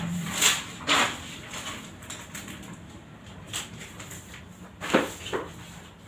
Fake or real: fake